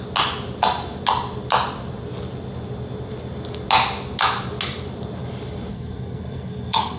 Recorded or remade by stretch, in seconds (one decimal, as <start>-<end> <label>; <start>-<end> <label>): 0.0-5.7 recorded; 5.7-7.0 remade

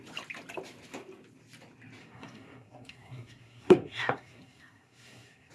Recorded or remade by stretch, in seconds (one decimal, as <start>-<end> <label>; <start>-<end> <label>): 0.0-2.0 recorded; 2.0-5.5 remade

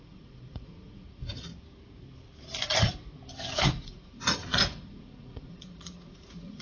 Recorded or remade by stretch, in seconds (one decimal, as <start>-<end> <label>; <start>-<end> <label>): 0.0-1.5 remade; 1.5-3.5 recorded; 3.5-6.6 remade

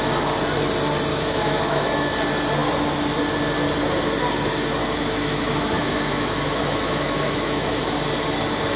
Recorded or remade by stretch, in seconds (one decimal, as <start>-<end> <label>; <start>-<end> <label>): 0.0-1.1 recorded; 1.1-1.9 remade; 1.9-4.8 recorded; 4.8-7.8 remade; 7.8-8.8 recorded